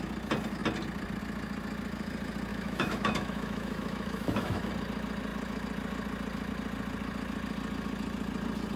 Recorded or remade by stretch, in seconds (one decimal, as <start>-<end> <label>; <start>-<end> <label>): 0.0-2.5 recorded; 2.5-4.7 remade; 4.7-8.8 recorded